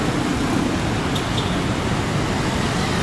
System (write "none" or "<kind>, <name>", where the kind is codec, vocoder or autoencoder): none